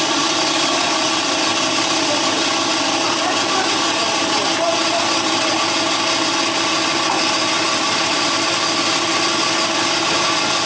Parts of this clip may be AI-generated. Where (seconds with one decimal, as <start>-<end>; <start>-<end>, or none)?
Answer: none